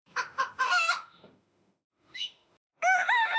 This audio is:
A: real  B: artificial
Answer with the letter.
B